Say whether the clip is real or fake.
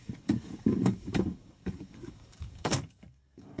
fake